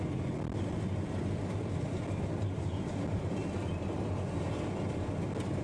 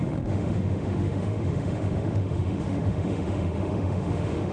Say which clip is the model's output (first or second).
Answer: second